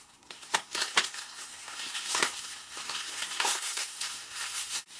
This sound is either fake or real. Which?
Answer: fake